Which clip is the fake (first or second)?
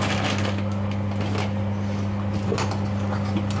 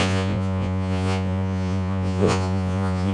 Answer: second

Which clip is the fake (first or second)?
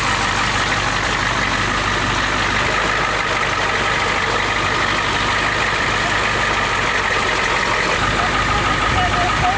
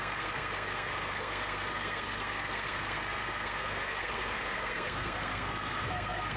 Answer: second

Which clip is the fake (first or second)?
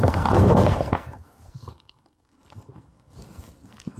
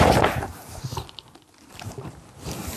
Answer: first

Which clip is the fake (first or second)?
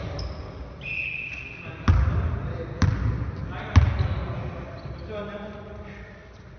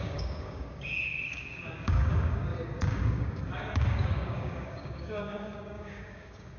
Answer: second